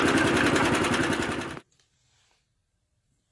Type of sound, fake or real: fake